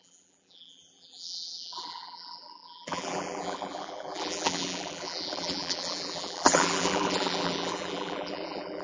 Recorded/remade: remade